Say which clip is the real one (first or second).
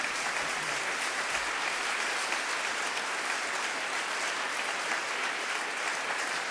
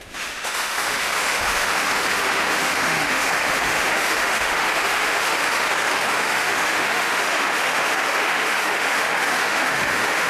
first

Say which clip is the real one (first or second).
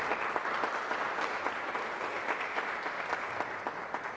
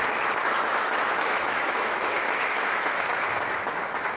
first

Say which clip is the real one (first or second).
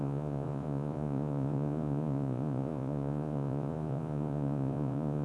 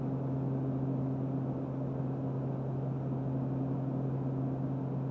second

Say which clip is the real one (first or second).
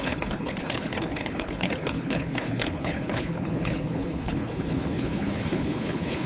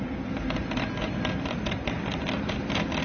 second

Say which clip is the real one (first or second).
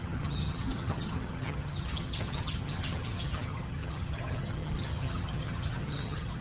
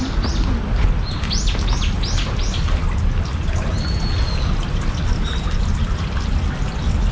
second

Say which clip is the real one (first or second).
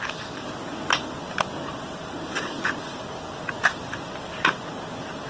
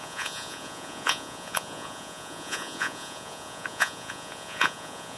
first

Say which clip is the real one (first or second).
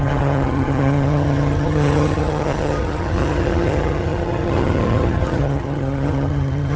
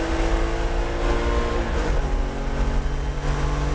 second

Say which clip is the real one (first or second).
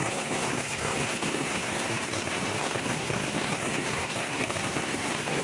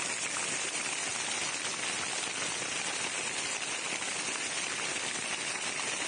second